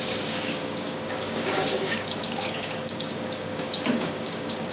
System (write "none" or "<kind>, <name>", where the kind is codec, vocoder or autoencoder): codec, DAC